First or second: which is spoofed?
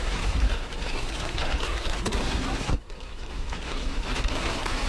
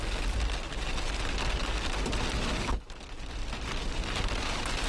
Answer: first